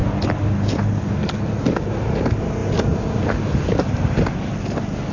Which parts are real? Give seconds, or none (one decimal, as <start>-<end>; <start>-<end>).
0.0-5.1